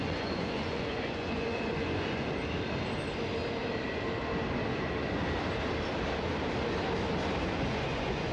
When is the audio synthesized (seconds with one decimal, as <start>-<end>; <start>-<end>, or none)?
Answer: 0.0-2.4; 7.4-8.3